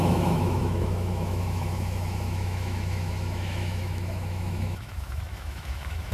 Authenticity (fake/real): fake